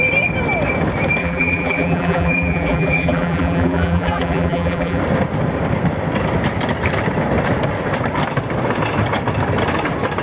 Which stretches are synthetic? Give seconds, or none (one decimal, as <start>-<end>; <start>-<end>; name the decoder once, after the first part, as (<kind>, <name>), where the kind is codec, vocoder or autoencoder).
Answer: 1.2-5.0 (vocoder, BigVGAN v2)